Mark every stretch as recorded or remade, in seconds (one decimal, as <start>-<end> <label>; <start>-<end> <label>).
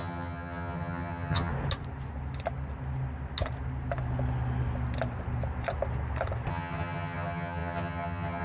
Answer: 0.0-1.5 remade; 1.5-6.5 recorded; 6.5-8.4 remade